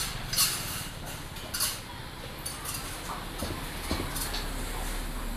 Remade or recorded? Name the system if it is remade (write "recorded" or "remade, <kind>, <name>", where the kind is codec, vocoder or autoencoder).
recorded